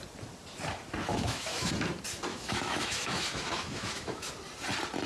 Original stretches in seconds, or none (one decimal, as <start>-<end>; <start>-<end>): 0.0-1.1; 1.7-2.3; 4.3-5.1